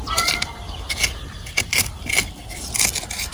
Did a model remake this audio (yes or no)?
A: no